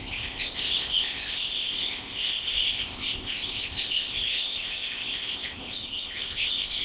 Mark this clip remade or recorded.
remade